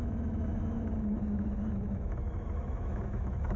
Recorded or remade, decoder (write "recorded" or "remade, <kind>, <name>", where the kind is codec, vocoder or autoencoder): remade, autoencoder, DAC-VAE